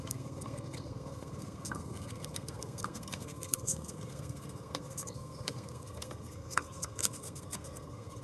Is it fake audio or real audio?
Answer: fake